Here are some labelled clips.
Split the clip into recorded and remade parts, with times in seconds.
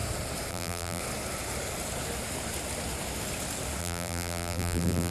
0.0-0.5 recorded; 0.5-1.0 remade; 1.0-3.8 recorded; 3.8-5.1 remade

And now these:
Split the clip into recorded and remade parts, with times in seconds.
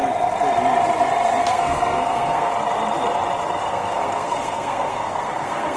0.0-1.4 recorded; 1.4-2.5 remade; 2.5-3.7 recorded; 3.7-5.8 remade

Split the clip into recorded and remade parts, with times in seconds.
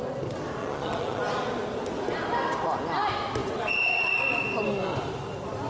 0.0-0.6 recorded; 0.6-1.2 remade; 1.2-5.7 recorded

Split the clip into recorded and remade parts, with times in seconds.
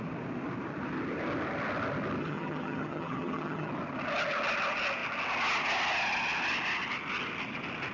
0.0-2.2 recorded; 2.2-3.7 remade; 3.7-7.9 recorded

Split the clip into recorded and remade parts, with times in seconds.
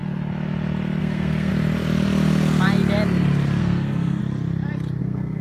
0.0-1.0 recorded; 1.0-1.5 remade; 1.5-3.6 recorded; 3.6-4.2 remade; 4.2-5.0 recorded; 5.0-5.4 remade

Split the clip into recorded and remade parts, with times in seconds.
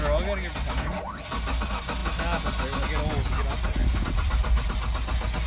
0.0-0.5 recorded; 0.5-1.2 remade; 1.2-3.8 recorded; 3.8-4.7 remade; 4.7-5.5 recorded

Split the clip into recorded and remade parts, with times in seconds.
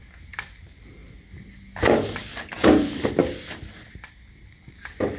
0.0-5.2 recorded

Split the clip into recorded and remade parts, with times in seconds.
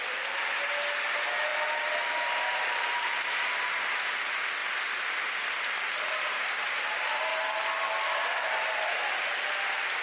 0.0-10.0 recorded